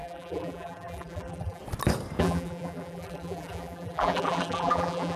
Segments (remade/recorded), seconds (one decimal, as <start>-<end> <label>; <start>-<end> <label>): 0.0-1.6 remade; 1.6-2.2 recorded; 2.2-5.2 remade